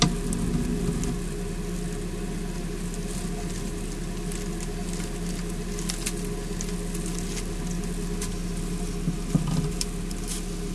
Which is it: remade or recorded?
recorded